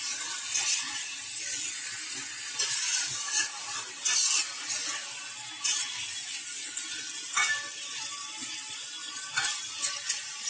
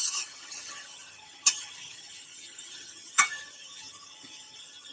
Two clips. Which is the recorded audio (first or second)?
first